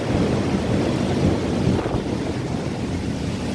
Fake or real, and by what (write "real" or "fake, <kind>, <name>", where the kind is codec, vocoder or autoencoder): real